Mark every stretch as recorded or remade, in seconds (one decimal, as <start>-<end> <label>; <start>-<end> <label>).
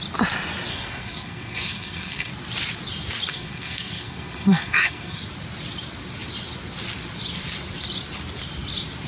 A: 0.0-0.7 recorded; 0.7-2.3 remade; 2.3-3.3 recorded; 3.3-5.2 remade; 5.2-9.1 recorded